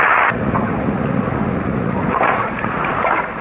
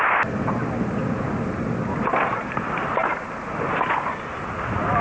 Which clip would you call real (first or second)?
second